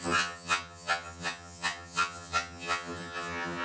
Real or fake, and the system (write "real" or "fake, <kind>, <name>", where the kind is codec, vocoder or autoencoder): fake, vocoder, HiFi-GAN